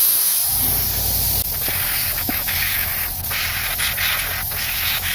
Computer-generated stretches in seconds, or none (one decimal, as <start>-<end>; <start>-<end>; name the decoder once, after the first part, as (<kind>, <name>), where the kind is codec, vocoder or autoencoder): 0.0-0.4 (autoencoder, DAC-VAE); 2.1-2.9; 4.6-5.1